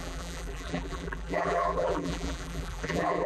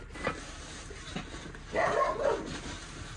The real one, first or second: second